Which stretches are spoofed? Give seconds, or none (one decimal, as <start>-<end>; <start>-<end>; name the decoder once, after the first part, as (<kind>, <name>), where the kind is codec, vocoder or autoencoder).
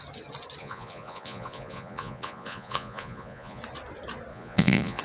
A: 0.6-3.6 (vocoder, Vocos); 4.3-5.0